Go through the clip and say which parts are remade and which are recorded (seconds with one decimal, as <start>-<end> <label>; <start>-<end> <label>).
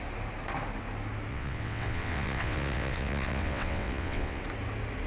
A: 0.0-1.3 recorded; 1.3-4.4 remade; 4.4-5.1 recorded